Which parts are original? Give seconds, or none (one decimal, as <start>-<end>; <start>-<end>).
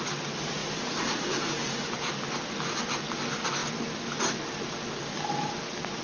0.0-0.6; 2.1-6.0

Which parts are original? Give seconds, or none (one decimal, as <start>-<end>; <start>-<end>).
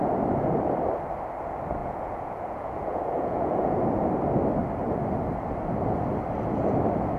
0.0-1.8; 3.8-7.2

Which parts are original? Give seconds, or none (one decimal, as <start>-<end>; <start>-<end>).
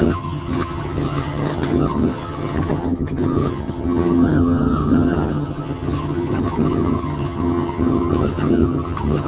none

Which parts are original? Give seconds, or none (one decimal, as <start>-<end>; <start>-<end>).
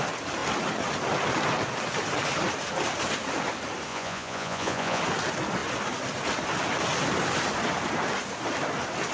0.0-3.9; 5.0-9.1